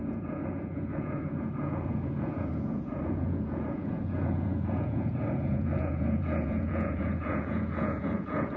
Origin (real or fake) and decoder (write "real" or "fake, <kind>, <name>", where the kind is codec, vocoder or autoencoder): fake, vocoder, Vocos